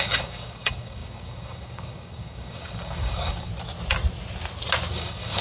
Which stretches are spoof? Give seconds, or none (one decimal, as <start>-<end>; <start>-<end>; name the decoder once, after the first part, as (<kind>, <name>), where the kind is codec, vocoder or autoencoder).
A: 0.0-3.5 (codec, DAC); 4.9-5.4

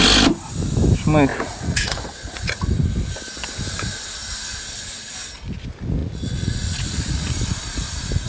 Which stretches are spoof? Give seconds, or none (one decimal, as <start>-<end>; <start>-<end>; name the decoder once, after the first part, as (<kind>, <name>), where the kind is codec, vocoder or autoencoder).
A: 1.3-2.6 (vocoder, Vocos); 6.0-7.3

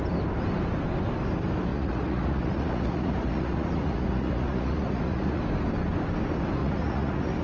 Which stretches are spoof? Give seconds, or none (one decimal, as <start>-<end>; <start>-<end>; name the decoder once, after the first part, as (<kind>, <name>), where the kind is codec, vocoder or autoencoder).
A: 1.7-5.4 (vocoder, Vocos); 6.6-7.4

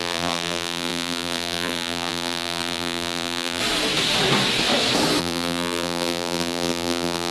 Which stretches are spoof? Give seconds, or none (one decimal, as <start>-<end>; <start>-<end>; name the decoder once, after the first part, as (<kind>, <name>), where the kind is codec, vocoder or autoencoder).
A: 0.0-3.6 (vocoder, BigVGAN v2); 5.2-7.3

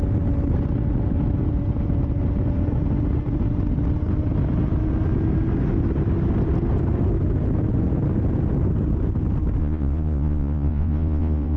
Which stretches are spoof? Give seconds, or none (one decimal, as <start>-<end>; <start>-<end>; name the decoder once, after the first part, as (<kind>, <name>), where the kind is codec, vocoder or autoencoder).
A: 9.6-11.6 (vocoder, Vocos)

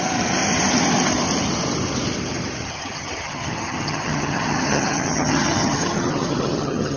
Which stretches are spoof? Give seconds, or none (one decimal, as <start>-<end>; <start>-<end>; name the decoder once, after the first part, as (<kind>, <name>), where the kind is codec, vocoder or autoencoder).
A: 2.7-7.0 (vocoder, HiFi-GAN)

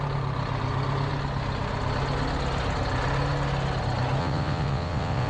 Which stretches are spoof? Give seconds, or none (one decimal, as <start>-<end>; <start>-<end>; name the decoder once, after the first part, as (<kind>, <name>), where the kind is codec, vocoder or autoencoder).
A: 4.2-5.3 (vocoder, WaveNeXt)